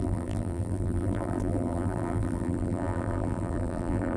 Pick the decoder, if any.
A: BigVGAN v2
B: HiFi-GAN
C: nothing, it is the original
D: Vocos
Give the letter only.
A